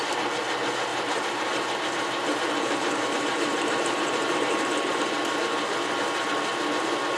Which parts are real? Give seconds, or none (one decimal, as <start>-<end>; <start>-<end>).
0.0-0.9; 5.0-7.2

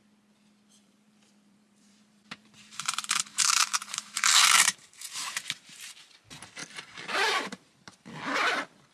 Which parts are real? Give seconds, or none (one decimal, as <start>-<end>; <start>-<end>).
0.0-0.8; 6.1-6.6; 8.2-8.9

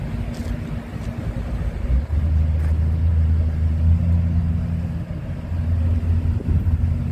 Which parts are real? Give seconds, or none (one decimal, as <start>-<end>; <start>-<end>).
0.0-7.1